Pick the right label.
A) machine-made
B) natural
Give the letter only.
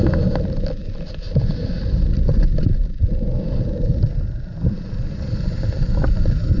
B